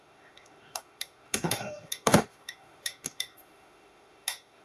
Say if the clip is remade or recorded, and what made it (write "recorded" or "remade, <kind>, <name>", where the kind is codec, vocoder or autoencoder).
remade, autoencoder, DAC-VAE